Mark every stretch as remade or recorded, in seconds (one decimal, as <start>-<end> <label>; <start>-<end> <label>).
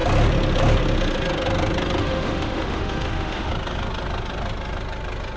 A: 0.0-2.0 recorded; 2.0-3.5 remade; 3.5-5.4 recorded